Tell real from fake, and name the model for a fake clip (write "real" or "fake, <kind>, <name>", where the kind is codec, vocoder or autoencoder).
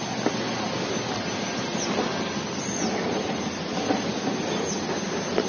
real